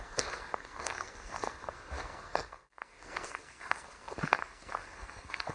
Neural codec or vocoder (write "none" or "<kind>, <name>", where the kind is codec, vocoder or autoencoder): codec, SNAC